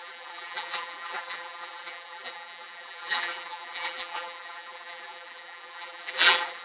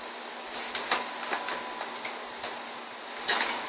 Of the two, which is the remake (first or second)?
first